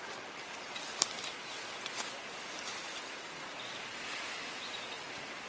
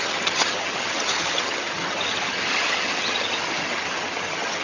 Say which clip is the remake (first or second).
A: second